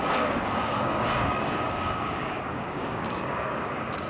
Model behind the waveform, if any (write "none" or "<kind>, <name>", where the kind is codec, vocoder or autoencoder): codec, DAC